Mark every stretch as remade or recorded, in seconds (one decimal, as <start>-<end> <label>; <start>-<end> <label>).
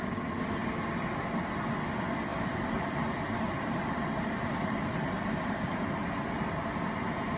0.0-2.3 recorded; 2.3-6.0 remade; 6.0-7.4 recorded